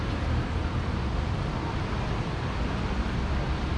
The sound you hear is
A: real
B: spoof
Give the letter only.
A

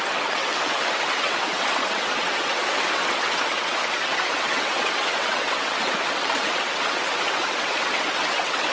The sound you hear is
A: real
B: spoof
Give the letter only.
B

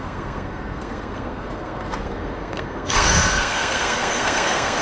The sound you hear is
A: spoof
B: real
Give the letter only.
A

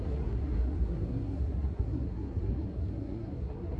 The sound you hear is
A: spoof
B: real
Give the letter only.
A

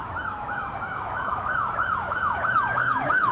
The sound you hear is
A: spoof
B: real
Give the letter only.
A